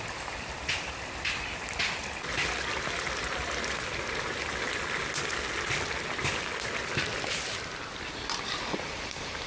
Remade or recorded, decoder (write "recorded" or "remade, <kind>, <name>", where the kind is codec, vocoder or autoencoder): recorded